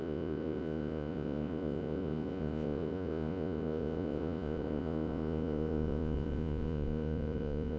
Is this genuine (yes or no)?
no